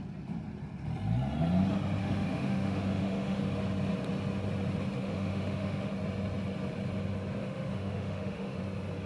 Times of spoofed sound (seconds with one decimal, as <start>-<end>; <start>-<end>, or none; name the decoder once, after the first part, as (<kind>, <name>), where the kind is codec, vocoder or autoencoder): 2.0-3.4 (autoencoder, DAC-VAE); 5.0-5.9; 7.4-8.6